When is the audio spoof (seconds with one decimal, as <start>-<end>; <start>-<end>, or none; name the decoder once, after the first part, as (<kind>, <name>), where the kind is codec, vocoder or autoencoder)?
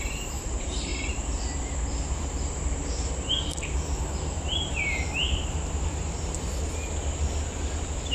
0.0-0.9 (vocoder, BigVGAN v2); 2.6-6.5